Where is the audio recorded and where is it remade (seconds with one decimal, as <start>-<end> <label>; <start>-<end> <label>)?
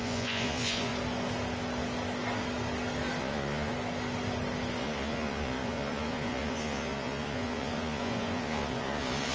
0.0-0.9 remade; 0.9-3.2 recorded; 3.2-3.7 remade; 3.7-4.8 recorded; 4.8-9.3 remade